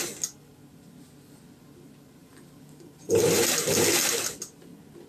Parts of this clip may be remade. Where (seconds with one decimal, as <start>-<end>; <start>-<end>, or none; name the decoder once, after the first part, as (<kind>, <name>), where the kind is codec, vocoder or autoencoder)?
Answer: 2.2-3.2 (vocoder, BigVGAN v2)